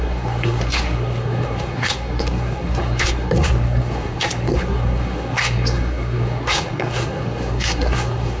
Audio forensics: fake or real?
fake